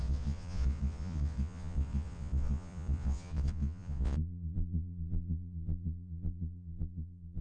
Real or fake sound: fake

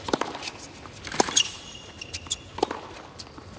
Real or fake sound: fake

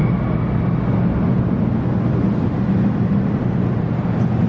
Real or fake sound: real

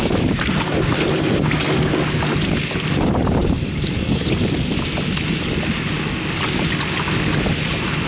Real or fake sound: real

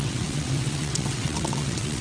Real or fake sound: fake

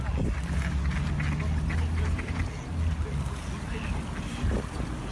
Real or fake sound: real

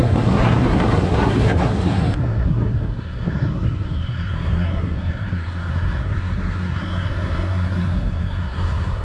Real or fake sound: fake